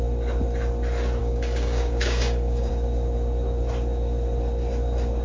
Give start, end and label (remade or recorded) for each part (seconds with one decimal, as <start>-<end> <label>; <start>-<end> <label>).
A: 0.0-1.2 recorded; 1.2-2.7 remade; 2.7-5.2 recorded